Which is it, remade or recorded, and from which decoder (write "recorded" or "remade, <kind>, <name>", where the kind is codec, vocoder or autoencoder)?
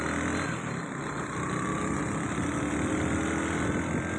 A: recorded